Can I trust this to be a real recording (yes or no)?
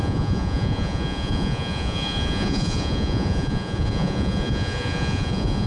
no